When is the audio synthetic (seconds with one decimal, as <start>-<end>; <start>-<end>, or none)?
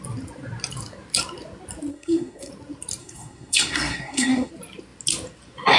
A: 1.9-2.5; 3.0-4.5